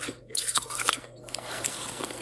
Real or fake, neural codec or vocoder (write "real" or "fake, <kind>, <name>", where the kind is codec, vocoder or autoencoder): fake, codec, SNAC